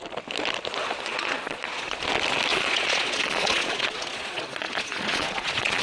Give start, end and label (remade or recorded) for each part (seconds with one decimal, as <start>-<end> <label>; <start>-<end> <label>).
0.0-1.1 recorded; 1.1-2.0 remade; 2.0-2.5 recorded; 2.5-5.8 remade